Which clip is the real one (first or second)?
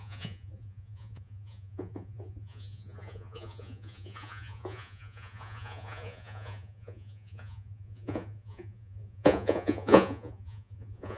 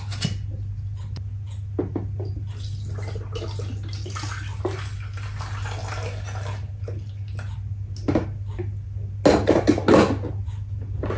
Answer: second